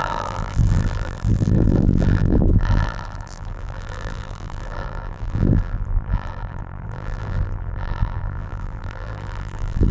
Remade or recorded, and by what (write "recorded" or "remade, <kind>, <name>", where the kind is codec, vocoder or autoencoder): remade, vocoder, BigVGAN v2